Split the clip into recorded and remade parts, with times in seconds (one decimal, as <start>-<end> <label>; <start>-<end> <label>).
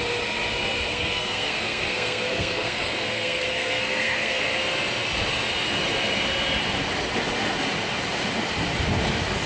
0.0-0.9 recorded; 0.9-4.4 remade; 4.4-9.5 recorded